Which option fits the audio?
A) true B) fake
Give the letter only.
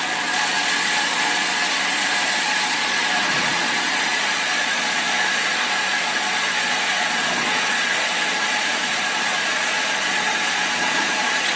B